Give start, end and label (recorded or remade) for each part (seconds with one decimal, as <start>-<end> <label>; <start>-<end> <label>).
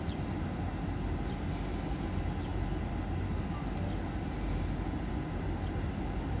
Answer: 0.0-6.4 recorded